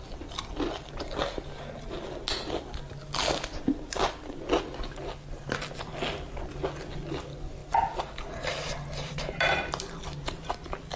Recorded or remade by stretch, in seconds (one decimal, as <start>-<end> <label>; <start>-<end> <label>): 0.0-11.0 recorded